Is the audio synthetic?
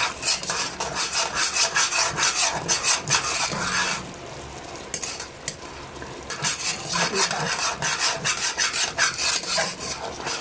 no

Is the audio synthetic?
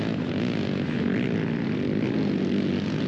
no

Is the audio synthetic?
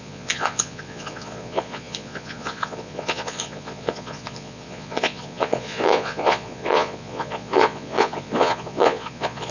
yes